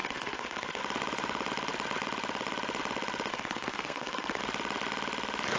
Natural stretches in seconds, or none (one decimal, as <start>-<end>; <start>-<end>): 0.8-3.3; 4.4-5.6